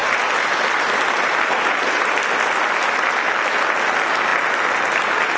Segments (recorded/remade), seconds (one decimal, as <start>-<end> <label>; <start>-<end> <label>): 0.0-5.4 recorded